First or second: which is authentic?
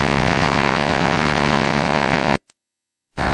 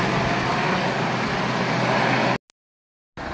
second